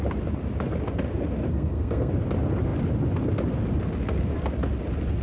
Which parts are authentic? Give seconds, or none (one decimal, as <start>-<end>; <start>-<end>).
0.0-1.5; 2.1-5.2